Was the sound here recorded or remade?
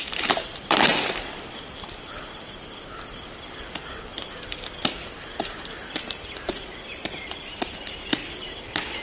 remade